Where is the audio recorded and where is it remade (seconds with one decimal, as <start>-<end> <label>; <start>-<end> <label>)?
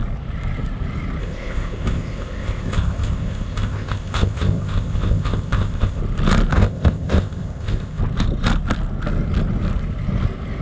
0.0-1.2 recorded; 1.2-6.0 remade; 6.0-6.5 recorded; 6.5-8.0 remade; 8.0-10.6 recorded